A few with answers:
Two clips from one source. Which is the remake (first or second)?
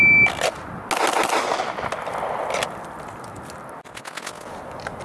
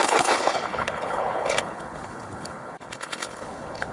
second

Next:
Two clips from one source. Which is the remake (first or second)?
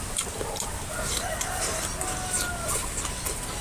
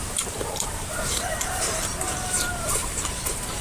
second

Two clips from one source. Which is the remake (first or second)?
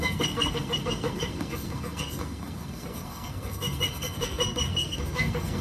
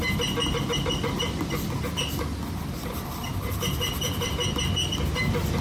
first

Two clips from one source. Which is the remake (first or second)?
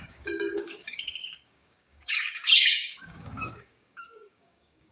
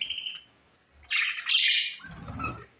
first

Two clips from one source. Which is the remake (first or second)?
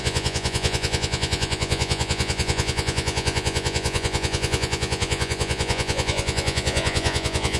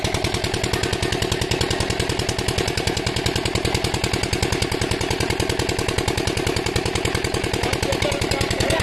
first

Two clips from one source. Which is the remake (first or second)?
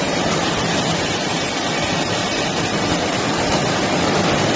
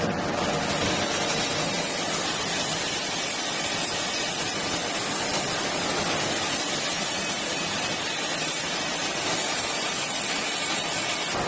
first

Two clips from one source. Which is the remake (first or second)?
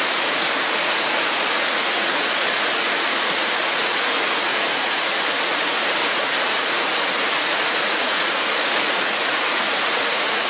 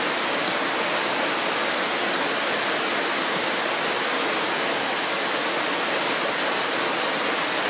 first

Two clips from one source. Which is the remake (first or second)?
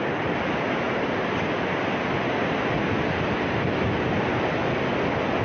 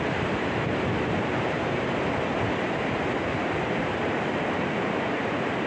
second